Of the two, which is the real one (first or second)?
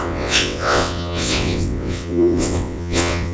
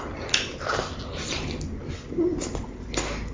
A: second